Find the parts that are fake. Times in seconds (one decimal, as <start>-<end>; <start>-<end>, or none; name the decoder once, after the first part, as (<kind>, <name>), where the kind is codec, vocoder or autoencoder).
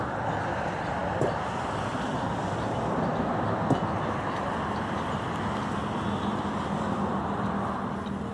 none